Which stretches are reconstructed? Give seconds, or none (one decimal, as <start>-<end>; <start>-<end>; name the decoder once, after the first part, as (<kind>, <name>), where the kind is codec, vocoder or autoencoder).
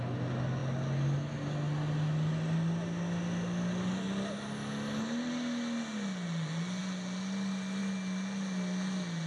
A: none